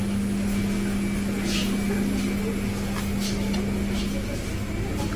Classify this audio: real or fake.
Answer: real